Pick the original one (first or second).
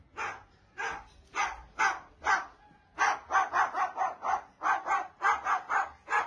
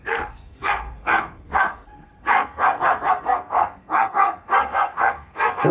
first